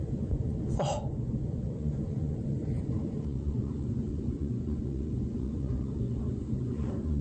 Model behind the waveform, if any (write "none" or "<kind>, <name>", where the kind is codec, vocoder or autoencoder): vocoder, Vocos